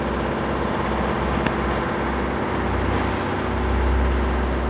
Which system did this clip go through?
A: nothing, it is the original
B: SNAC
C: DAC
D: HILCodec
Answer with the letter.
A